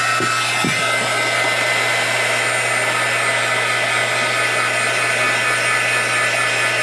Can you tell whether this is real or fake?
real